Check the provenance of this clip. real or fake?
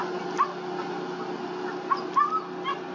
real